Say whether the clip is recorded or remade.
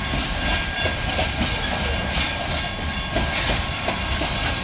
remade